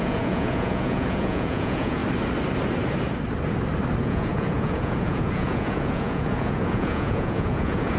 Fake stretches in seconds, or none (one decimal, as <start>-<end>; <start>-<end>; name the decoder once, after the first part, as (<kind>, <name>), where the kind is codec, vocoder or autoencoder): 0.0-2.0 (vocoder, Vocos); 4.0-8.0